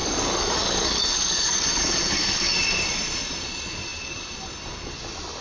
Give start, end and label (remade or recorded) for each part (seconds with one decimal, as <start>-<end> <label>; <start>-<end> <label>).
0.0-2.5 remade; 2.5-5.4 recorded

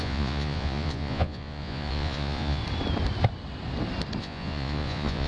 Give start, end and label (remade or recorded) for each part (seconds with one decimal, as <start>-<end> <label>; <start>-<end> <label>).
0.0-2.6 remade; 2.6-4.2 recorded; 4.2-5.3 remade